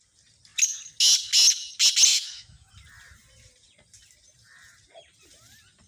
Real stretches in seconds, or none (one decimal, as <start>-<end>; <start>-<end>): 0.0-2.1; 2.7-5.9